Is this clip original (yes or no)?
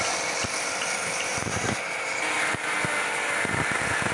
yes